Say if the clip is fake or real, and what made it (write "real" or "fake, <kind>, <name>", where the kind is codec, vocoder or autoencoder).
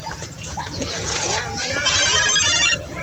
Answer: fake, vocoder, Vocos